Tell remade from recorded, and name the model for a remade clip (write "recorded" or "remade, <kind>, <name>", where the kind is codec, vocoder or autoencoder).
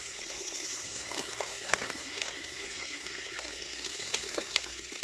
remade, codec, SNAC